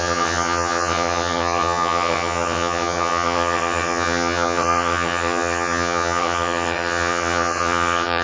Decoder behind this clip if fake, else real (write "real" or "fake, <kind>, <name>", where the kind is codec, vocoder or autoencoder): fake, vocoder, HiFi-GAN